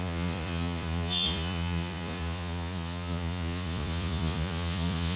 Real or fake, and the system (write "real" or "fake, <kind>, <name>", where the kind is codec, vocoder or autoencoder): fake, vocoder, Vocos